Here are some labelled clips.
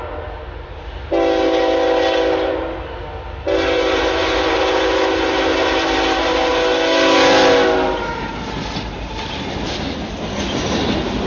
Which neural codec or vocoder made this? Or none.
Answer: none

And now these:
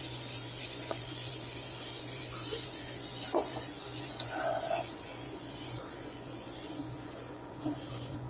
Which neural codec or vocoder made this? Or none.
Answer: vocoder, Vocos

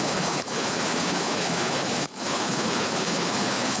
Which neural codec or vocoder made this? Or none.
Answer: codec, HILCodec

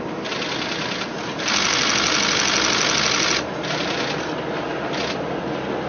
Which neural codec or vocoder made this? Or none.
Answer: none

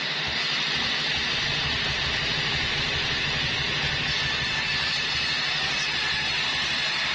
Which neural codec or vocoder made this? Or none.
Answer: none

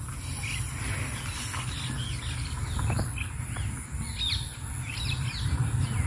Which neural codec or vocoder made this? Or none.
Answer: none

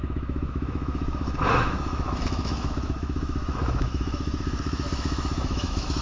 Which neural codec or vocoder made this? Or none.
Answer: autoencoder, DAC-VAE